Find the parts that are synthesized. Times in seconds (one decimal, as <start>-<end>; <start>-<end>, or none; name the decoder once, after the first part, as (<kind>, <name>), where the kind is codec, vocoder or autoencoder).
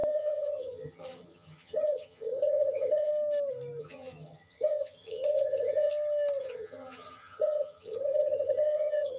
0.0-3.1 (vocoder, HiFi-GAN); 3.8-5.9; 6.4-9.2